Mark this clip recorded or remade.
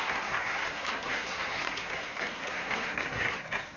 remade